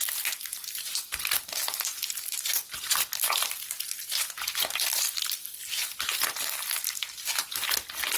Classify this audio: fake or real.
real